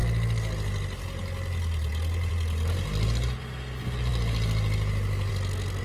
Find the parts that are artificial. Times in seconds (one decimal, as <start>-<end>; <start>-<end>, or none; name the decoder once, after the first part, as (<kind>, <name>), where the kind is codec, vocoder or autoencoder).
none